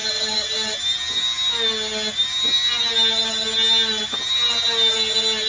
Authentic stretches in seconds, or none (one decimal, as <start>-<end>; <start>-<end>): 0.0-5.5